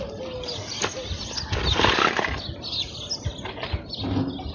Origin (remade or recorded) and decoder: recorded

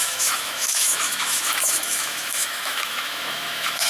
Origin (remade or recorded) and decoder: remade, autoencoder, DAC-VAE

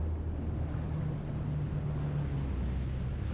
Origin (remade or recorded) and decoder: recorded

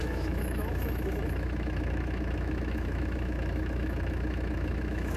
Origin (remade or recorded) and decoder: remade, autoencoder, DAC-VAE